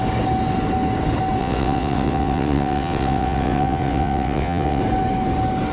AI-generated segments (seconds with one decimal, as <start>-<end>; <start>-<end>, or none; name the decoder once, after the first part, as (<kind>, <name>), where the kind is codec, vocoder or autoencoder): 1.4-4.8 (vocoder, WaveNeXt)